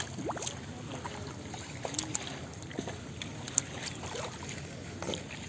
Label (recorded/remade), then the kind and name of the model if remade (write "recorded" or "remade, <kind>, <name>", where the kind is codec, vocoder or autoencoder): recorded